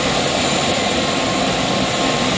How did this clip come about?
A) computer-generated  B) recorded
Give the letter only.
B